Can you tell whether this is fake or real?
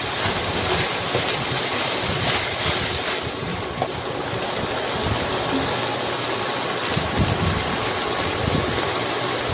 fake